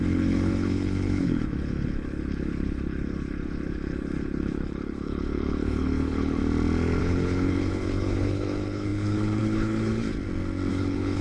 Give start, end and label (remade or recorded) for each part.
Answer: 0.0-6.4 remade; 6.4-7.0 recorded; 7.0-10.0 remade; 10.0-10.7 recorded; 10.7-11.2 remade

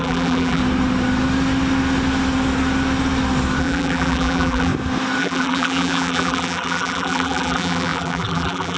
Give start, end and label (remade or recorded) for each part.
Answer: 0.0-0.6 remade; 0.6-3.6 recorded; 3.6-4.7 remade; 4.7-5.2 recorded; 5.2-8.8 remade

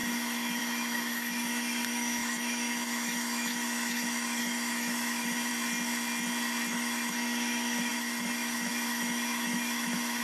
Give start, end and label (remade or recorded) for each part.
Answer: 0.0-5.5 remade; 5.5-6.7 recorded; 6.7-10.2 remade

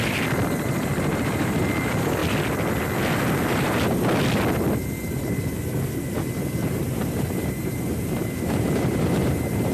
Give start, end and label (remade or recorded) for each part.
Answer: 0.0-1.1 recorded; 1.1-1.6 remade; 1.6-6.6 recorded; 6.6-9.7 remade

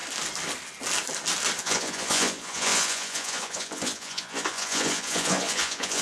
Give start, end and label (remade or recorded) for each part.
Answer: 0.0-1.6 recorded; 1.6-6.0 remade

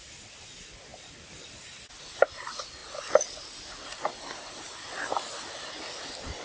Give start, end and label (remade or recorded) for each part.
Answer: 0.0-0.9 recorded; 0.9-1.9 remade; 1.9-2.8 recorded; 2.8-4.5 remade; 4.5-6.4 recorded